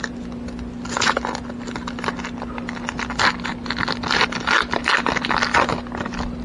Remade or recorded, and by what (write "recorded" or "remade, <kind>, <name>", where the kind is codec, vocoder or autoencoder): recorded